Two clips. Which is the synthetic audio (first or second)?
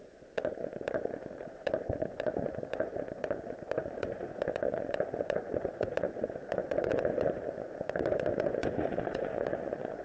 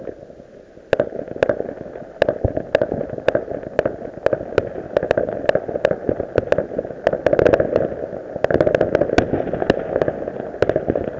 first